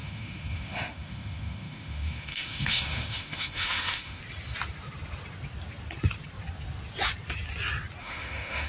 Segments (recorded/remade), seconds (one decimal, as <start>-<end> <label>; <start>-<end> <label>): 0.0-4.2 remade; 4.2-8.0 recorded; 8.0-8.7 remade